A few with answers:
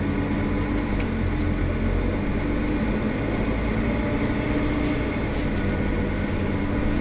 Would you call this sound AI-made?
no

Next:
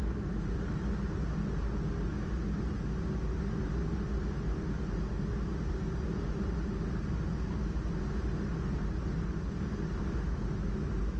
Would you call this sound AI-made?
no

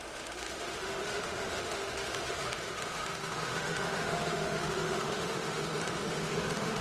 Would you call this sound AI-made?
yes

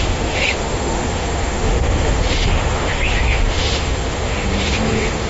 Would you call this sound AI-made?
yes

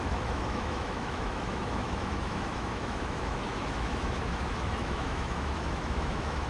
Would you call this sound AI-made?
yes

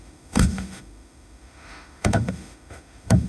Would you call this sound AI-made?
yes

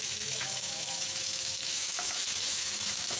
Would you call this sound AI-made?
yes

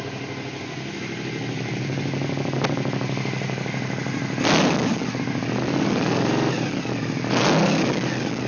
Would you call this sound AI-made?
no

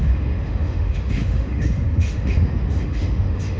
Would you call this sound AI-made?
yes